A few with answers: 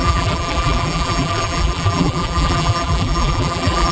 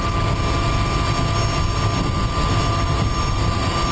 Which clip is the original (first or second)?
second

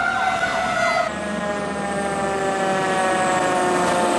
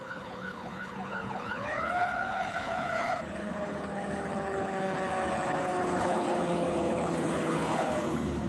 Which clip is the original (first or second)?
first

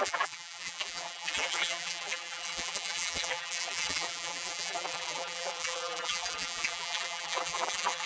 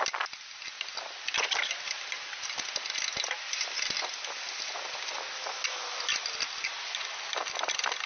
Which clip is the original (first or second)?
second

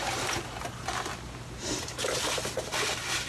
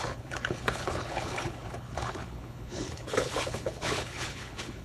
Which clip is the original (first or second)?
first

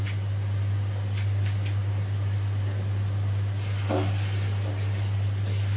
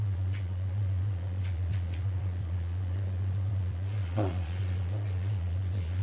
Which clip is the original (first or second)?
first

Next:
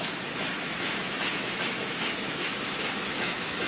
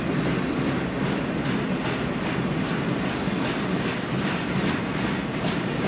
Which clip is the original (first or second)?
second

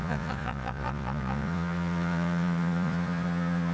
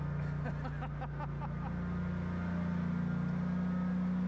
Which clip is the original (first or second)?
second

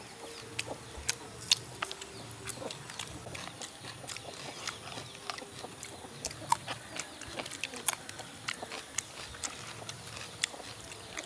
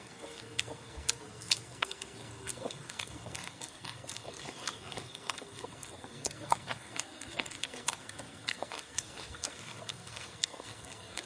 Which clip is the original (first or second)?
first